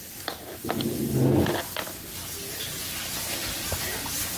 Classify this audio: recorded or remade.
recorded